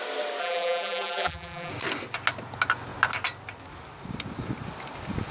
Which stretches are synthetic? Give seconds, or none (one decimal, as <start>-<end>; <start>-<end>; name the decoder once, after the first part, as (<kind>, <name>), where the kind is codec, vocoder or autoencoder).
0.4-1.7 (vocoder, BigVGAN v2)